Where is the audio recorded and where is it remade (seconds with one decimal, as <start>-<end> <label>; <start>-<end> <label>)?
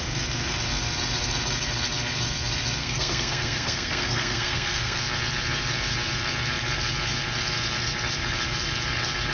0.0-2.8 recorded; 2.8-5.0 remade; 5.0-9.3 recorded